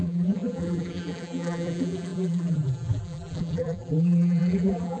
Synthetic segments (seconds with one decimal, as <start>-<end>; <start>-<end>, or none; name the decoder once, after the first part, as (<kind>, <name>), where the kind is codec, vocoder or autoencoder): 0.0-5.0 (vocoder, BigVGAN v2)

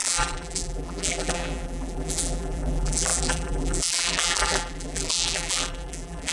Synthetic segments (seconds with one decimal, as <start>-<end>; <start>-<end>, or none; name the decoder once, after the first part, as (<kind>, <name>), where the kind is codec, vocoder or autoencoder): 0.0-6.3 (vocoder, BigVGAN v2)

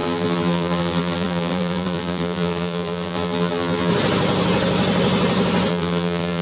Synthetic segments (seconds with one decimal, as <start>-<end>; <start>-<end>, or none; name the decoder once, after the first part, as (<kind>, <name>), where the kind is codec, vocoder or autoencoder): 0.0-3.9 (vocoder, BigVGAN v2); 5.7-6.4